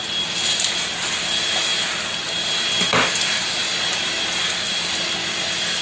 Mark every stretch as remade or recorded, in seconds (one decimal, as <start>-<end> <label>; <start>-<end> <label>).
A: 0.0-5.8 recorded

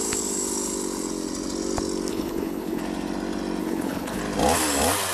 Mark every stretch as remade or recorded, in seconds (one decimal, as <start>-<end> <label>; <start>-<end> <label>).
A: 0.0-2.1 recorded; 2.1-2.8 remade; 2.8-3.6 recorded; 3.6-4.2 remade; 4.2-5.1 recorded